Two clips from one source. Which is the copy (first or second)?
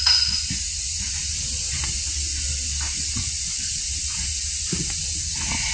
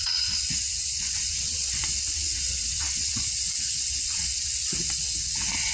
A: second